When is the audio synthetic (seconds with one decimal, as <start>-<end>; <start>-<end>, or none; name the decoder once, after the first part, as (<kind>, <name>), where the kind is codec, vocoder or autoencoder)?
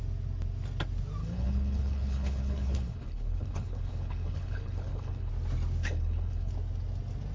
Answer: 1.2-5.3 (codec, HILCodec); 5.8-6.5